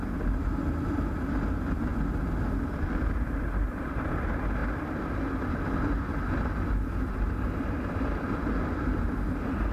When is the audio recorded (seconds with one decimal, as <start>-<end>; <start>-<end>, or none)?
0.0-9.7